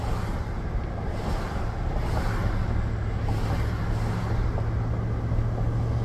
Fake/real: real